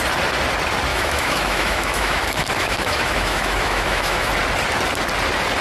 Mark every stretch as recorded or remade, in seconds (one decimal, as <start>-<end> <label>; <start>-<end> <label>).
0.0-0.9 recorded; 0.9-4.3 remade; 4.3-5.6 recorded